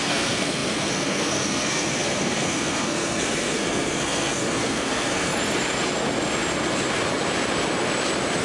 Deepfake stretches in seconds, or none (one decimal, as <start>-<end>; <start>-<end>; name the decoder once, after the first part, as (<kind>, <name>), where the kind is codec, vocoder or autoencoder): 0.0-5.3 (codec, SNAC)